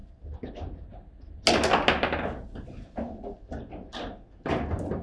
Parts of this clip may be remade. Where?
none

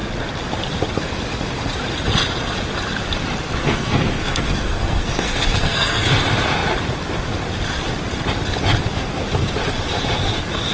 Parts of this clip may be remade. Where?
3.6-6.1